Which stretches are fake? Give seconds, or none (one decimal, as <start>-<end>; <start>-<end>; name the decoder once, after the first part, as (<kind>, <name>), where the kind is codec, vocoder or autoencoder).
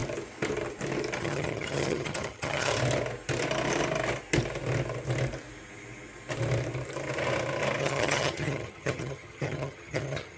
1.2-2.7 (vocoder, HiFi-GAN); 7.8-10.4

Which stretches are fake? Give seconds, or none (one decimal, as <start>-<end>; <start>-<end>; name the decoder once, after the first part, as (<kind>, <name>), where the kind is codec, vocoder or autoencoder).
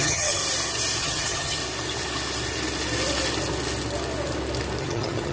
0.0-0.4 (vocoder, HiFi-GAN); 1.0-1.6; 4.8-5.3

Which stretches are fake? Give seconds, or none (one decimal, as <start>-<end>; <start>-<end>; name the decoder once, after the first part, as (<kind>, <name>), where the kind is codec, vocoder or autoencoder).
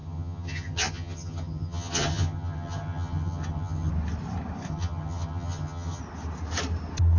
0.0-3.9 (vocoder, HiFi-GAN); 4.7-6.0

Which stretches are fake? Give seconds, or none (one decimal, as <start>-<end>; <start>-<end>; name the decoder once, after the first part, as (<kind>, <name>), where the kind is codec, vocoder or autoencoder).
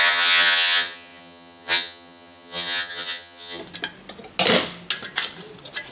0.0-3.6 (vocoder, HiFi-GAN)